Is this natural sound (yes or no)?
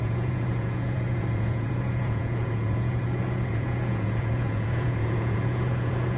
no